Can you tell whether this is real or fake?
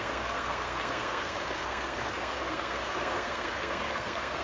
fake